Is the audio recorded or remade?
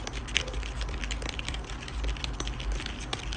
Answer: remade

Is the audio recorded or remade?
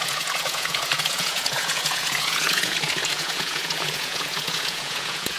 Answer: remade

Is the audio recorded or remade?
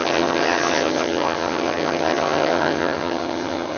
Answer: remade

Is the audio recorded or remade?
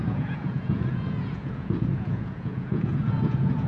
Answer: remade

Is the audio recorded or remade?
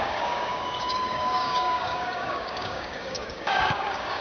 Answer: remade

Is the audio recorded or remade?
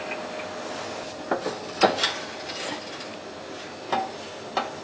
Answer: recorded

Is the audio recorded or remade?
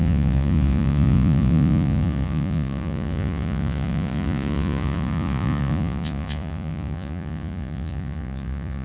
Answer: remade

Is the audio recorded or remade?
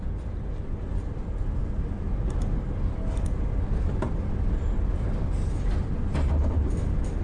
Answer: recorded